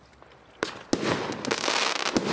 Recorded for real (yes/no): yes